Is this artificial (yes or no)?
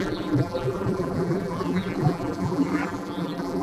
yes